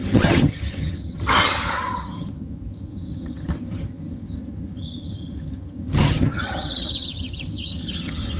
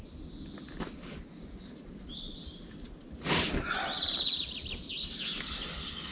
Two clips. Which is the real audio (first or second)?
second